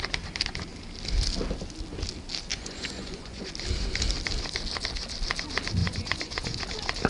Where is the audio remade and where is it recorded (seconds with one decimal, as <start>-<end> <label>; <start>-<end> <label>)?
0.0-2.5 recorded; 2.5-3.5 remade; 3.5-5.8 recorded; 5.8-6.6 remade; 6.6-7.1 recorded

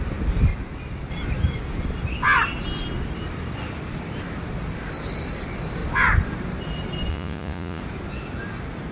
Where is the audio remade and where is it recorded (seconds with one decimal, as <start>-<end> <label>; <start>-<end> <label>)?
0.0-7.1 recorded; 7.1-7.8 remade; 7.8-8.9 recorded

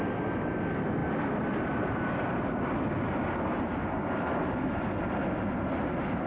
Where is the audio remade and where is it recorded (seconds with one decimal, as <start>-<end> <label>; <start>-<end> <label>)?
0.0-6.3 recorded

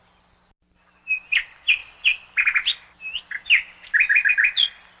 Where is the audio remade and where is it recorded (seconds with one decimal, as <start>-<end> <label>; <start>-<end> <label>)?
0.0-5.0 recorded

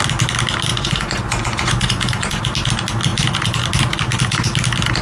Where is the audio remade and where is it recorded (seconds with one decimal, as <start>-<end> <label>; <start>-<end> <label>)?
0.0-0.7 recorded; 0.7-2.4 remade; 2.4-5.0 recorded

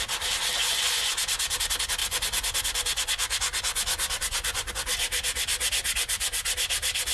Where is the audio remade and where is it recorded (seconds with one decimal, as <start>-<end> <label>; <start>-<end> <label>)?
0.0-0.6 recorded; 0.6-1.2 remade; 1.2-2.0 recorded; 2.0-4.7 remade; 4.7-7.1 recorded

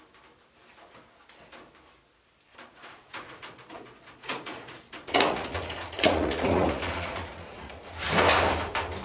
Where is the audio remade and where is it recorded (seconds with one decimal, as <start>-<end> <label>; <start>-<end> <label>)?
0.0-2.7 recorded; 2.7-7.8 remade; 7.8-9.0 recorded